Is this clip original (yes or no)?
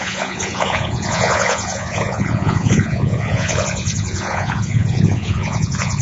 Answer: no